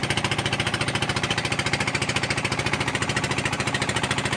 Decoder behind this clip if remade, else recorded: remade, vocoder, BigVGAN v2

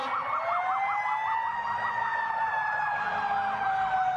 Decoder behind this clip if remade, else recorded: recorded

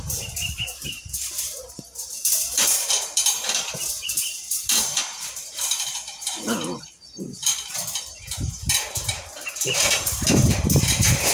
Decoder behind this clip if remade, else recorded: remade, vocoder, BigVGAN v2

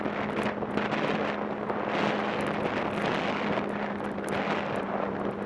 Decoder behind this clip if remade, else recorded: recorded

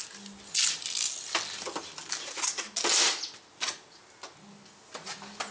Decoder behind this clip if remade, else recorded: recorded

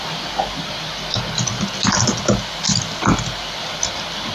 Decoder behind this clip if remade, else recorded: recorded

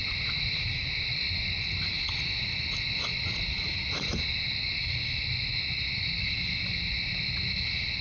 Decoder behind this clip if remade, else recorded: recorded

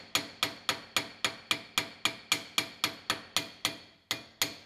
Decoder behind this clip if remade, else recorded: recorded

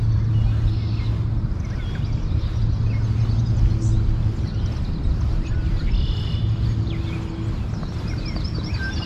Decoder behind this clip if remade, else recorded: recorded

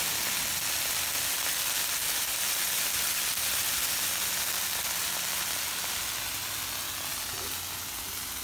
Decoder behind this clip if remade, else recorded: recorded